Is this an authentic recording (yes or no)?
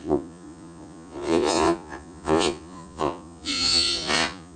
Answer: no